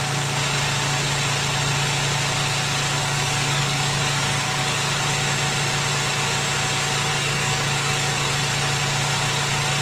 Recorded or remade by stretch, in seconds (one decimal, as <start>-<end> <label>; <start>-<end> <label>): 0.0-3.0 recorded; 3.0-4.6 remade; 4.6-7.1 recorded; 7.1-8.3 remade; 8.3-9.8 recorded